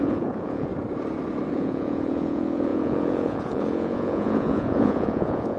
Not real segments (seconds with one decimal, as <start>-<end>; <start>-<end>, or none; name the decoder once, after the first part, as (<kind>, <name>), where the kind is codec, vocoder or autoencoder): 0.0-0.7 (vocoder, Vocos); 1.5-5.6